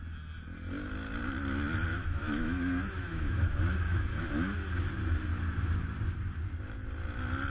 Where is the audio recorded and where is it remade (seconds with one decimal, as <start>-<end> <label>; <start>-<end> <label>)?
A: 0.0-1.9 recorded; 1.9-4.3 remade; 4.3-7.5 recorded